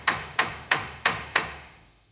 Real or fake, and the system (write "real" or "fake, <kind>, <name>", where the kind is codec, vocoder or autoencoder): fake, autoencoder, DAC-VAE